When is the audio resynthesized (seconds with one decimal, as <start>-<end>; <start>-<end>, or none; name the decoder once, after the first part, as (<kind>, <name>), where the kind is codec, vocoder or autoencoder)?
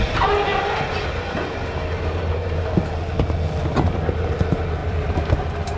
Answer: 4.8-5.3 (vocoder, BigVGAN v2)